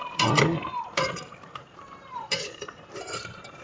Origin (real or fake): fake